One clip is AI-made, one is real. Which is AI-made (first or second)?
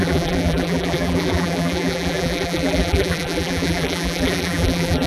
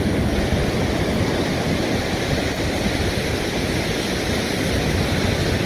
first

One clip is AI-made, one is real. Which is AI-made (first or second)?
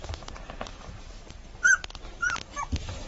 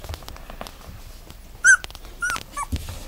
first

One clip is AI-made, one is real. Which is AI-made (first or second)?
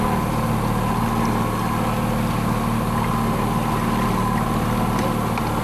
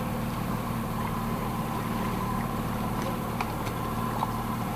second